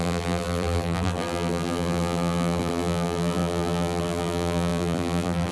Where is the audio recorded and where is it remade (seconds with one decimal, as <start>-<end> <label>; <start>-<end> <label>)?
0.0-5.5 remade